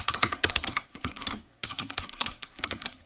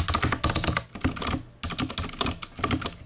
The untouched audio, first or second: second